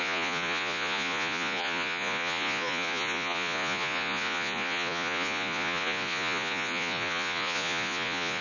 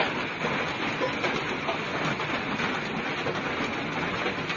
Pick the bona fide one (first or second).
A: second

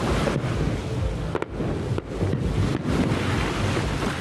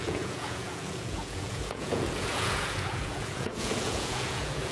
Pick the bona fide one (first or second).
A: first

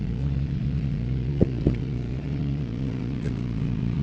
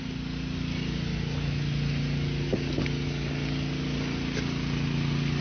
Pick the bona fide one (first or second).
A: second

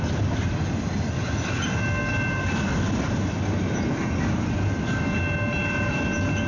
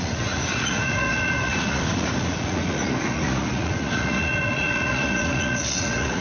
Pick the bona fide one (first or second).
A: first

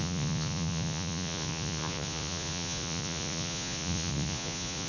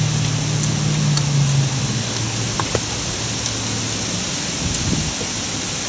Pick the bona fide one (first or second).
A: second